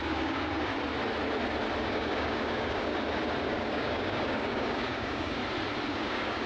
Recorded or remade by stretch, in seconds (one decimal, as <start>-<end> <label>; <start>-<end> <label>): 0.0-0.7 remade; 0.7-1.8 recorded; 1.8-2.9 remade; 2.9-3.5 recorded; 3.5-5.4 remade; 5.4-5.9 recorded; 5.9-6.5 remade